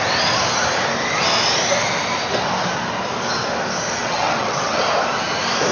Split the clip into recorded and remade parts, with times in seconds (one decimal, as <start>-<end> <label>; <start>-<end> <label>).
0.0-4.0 recorded; 4.0-4.8 remade; 4.8-5.7 recorded